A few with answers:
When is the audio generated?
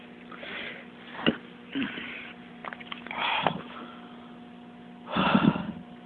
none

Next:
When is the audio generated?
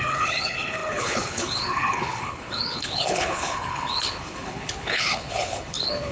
0.0-6.1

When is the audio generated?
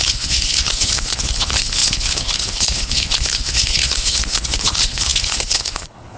0.0-6.2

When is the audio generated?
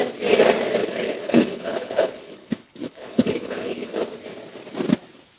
0.8-4.0